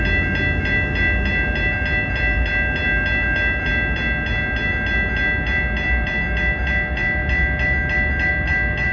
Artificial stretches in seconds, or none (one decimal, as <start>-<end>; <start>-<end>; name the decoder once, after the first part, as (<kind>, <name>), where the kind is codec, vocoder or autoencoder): none